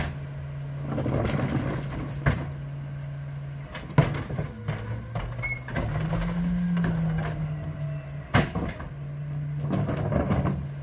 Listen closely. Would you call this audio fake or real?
real